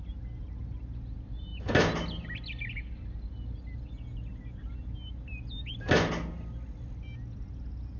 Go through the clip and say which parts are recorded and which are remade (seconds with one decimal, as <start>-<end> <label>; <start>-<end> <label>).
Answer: 0.0-8.0 recorded